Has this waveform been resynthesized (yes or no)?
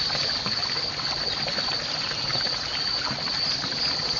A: no